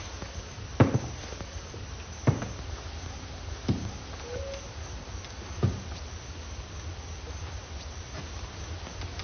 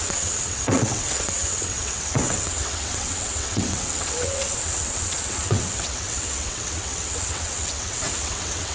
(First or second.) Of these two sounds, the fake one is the second